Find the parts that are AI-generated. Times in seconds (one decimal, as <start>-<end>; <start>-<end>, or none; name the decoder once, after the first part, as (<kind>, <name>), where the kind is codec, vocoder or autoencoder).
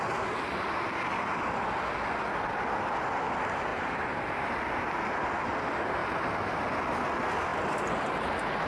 3.7-4.5 (vocoder, BigVGAN v2); 6.0-6.6; 7.5-8.7